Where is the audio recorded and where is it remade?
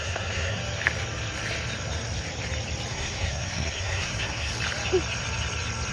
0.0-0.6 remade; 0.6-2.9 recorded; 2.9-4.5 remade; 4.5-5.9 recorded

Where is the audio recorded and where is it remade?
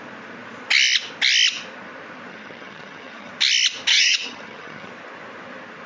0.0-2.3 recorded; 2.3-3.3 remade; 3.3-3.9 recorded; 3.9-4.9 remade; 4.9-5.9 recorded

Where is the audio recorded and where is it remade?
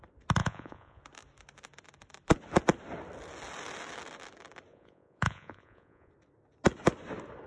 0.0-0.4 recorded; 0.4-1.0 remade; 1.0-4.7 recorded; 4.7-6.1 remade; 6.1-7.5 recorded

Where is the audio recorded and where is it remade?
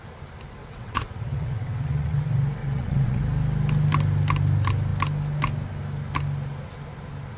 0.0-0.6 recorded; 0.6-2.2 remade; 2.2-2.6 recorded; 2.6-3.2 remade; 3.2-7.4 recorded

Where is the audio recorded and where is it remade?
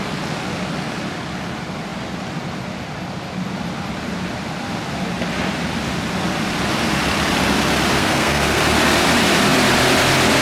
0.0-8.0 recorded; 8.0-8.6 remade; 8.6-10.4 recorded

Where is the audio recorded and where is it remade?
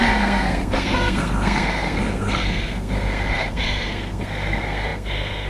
0.0-5.5 remade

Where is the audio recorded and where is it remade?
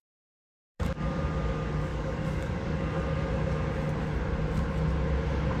0.0-0.5 recorded; 0.5-1.2 remade; 1.2-1.9 recorded; 1.9-2.8 remade; 2.8-5.6 recorded